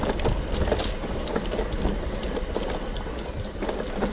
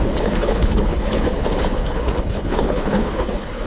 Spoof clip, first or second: second